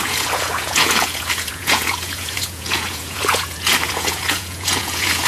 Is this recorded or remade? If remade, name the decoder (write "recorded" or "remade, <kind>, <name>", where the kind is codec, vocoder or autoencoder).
remade, vocoder, Vocos